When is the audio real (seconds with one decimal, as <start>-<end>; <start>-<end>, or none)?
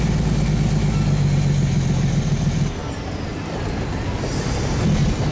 0.0-5.3